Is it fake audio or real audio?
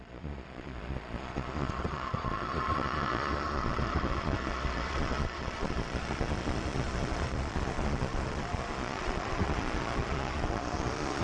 fake